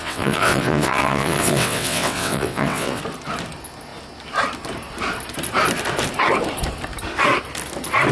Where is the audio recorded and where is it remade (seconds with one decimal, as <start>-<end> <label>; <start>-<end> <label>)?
0.0-3.0 remade; 3.0-8.1 recorded